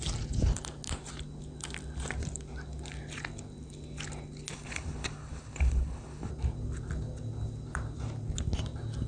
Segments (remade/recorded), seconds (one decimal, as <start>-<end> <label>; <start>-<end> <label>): 0.0-4.5 recorded; 4.5-6.3 remade; 6.3-9.1 recorded